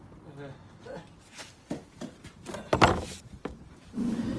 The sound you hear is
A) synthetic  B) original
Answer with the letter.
B